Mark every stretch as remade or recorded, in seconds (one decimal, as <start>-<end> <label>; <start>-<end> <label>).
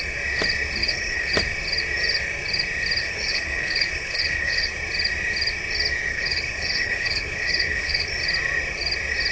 0.0-0.8 recorded; 0.8-1.3 remade; 1.3-3.0 recorded; 3.0-4.7 remade; 4.7-6.1 recorded; 6.1-8.1 remade; 8.1-9.3 recorded